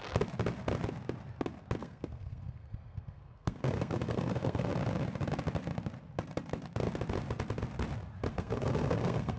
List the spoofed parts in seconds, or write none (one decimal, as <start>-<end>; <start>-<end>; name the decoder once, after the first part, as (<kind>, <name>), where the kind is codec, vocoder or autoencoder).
1.8-4.7 (codec, SNAC); 8.3-9.4